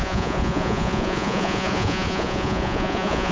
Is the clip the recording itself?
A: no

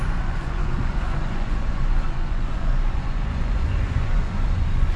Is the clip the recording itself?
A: no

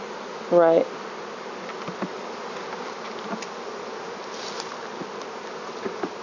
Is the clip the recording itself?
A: yes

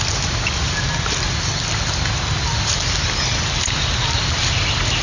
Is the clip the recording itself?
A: yes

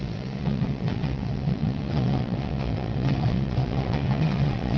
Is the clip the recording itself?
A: no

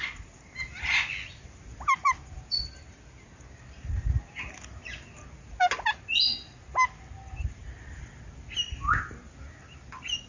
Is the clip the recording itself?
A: yes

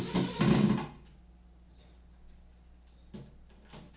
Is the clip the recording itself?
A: yes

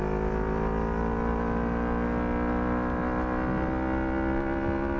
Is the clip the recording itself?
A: yes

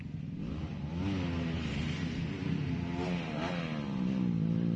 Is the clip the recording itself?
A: yes